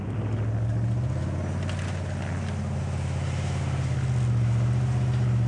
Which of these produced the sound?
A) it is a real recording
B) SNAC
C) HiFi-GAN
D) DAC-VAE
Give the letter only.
A